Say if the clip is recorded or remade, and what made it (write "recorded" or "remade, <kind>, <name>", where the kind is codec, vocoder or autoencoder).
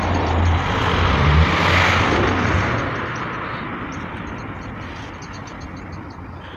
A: recorded